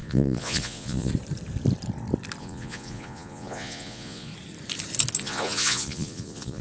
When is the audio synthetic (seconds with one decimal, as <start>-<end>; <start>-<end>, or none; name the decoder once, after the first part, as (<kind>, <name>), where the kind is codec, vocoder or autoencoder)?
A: 0.0-1.1 (vocoder, Vocos); 2.4-4.3; 5.2-6.6